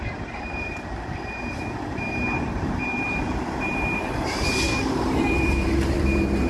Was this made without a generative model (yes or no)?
no